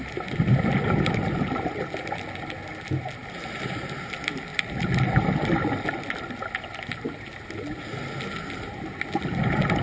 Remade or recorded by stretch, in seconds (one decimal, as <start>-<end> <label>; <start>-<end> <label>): 0.0-9.8 recorded